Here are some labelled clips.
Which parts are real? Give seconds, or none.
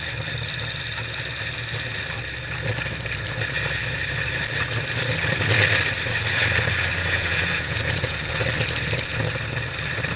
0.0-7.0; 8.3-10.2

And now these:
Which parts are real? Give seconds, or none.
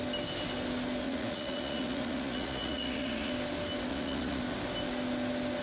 0.0-1.0; 3.3-3.9; 4.4-5.6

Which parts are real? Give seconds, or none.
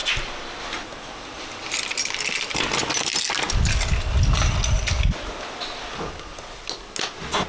0.0-7.5